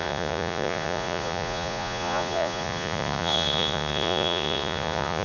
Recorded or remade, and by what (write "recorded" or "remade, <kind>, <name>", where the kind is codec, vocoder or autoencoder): remade, vocoder, Vocos